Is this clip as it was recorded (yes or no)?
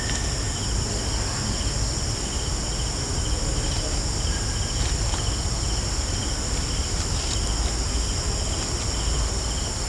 yes